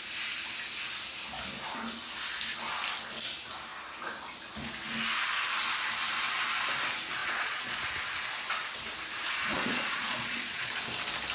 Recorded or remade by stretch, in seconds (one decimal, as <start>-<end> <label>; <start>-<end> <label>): 0.0-7.2 recorded; 7.2-7.9 remade; 7.9-9.5 recorded; 9.5-10.7 remade; 10.7-11.3 recorded